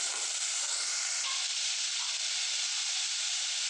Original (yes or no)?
yes